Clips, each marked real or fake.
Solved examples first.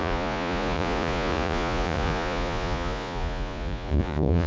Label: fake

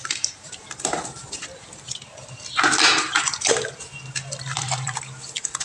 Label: real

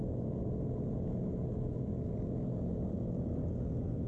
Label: real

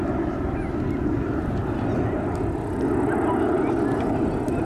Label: real